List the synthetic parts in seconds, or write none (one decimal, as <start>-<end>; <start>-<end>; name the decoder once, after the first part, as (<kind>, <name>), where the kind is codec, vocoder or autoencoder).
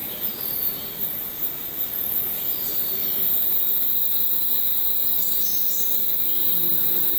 6.4-7.2 (vocoder, BigVGAN v2)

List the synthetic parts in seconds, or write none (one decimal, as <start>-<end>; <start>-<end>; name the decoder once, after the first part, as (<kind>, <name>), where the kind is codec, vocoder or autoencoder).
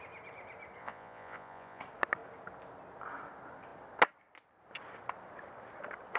0.8-1.8 (vocoder, Vocos)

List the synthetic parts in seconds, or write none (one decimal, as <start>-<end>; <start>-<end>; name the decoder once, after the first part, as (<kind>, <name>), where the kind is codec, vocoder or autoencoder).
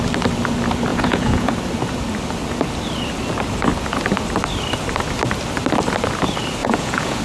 0.9-1.5 (vocoder, Vocos); 6.6-7.2